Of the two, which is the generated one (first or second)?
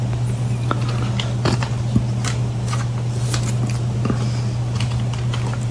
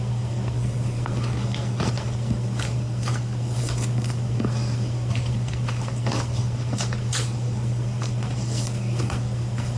second